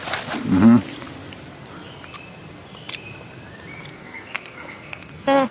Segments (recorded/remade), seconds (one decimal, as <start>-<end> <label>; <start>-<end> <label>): 0.0-3.9 recorded; 3.9-5.5 remade